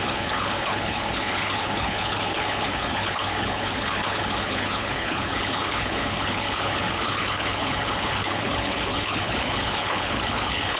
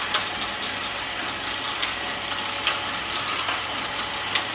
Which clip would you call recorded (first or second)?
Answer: second